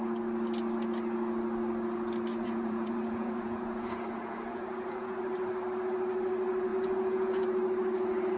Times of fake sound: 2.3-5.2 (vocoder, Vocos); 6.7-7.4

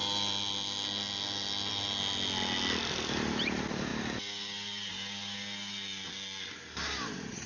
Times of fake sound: none

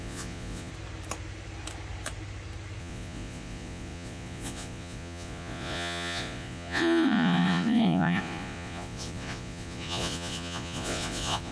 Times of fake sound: 0.0-0.7 (vocoder, Vocos); 2.8-11.5